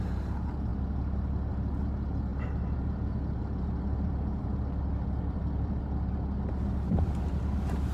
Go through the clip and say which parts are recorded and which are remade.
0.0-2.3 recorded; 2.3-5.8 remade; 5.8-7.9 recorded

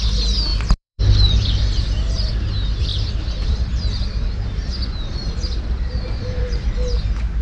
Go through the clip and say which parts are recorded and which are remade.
0.0-0.5 recorded; 0.5-1.0 remade; 1.0-2.9 recorded; 2.9-4.7 remade; 4.7-5.2 recorded; 5.2-6.7 remade; 6.7-7.4 recorded